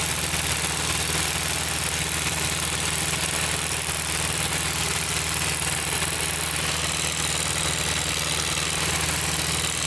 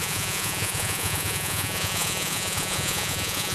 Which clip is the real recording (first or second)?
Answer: first